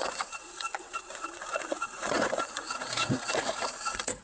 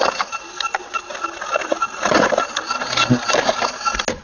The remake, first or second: first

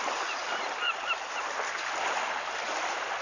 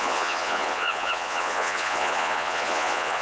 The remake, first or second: second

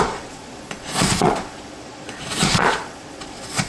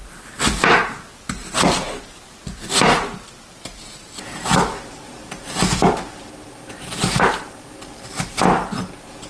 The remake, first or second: first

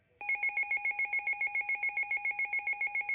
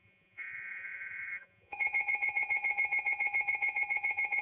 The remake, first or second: second